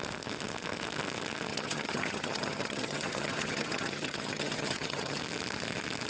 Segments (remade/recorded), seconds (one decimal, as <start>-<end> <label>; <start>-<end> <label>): 0.0-1.5 recorded; 1.5-5.2 remade; 5.2-6.1 recorded